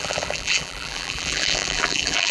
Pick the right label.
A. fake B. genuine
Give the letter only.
A